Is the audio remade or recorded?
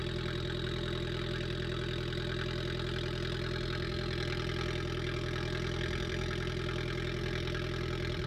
recorded